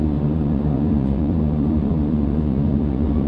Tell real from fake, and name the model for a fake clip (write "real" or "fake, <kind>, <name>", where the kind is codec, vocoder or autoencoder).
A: fake, vocoder, Vocos